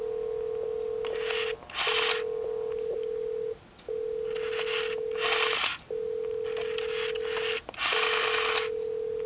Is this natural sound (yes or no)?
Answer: yes